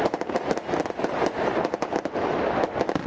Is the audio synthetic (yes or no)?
no